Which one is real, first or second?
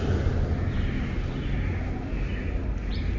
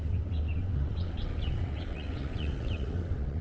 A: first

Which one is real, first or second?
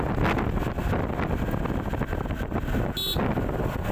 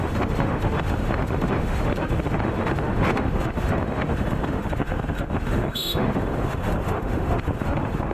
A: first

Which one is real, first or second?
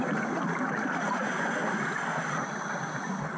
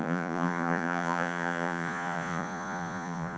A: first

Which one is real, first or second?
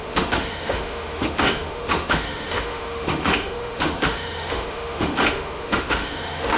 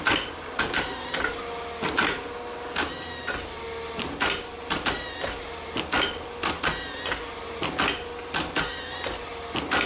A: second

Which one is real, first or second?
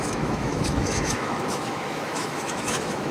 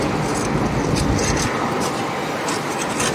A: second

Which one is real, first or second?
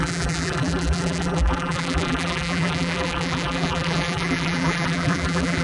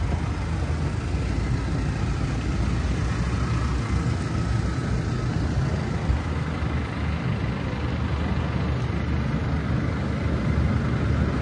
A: second